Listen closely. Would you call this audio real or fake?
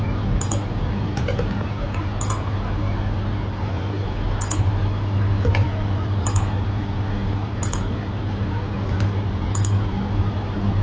real